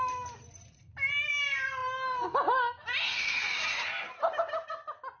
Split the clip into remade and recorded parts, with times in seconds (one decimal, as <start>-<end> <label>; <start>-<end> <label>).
0.0-5.2 recorded